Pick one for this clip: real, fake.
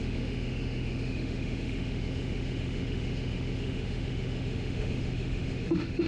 fake